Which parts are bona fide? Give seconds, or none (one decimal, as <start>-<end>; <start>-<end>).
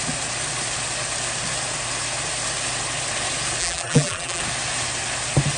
0.0-3.6; 4.4-5.6